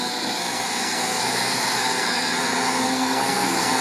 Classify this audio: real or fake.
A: fake